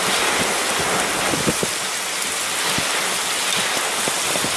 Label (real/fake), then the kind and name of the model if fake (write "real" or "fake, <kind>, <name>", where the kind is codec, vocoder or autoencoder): real